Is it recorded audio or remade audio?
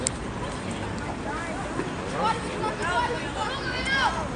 recorded